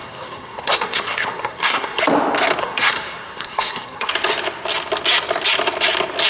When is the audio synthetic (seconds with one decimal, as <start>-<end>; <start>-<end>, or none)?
0.0-2.0; 2.6-4.1